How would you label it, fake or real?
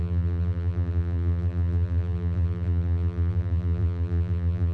fake